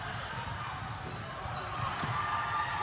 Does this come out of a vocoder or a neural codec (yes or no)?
yes